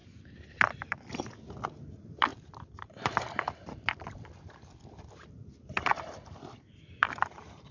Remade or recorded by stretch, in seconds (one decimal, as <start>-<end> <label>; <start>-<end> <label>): 0.0-0.7 recorded; 0.7-7.7 remade